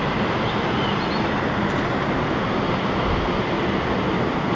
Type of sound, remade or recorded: recorded